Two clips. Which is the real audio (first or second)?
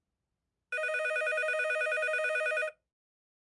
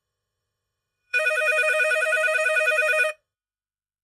first